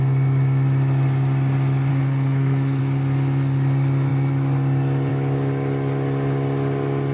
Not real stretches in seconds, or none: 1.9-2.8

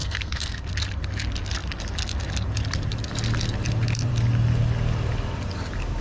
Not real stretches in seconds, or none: 0.0-0.7

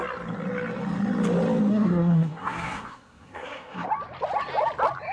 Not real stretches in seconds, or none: 1.7-3.9

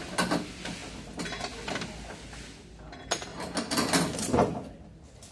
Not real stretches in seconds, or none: none

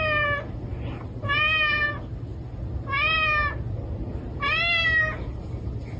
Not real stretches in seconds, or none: none